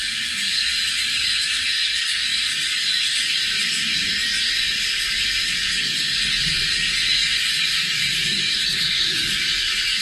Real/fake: fake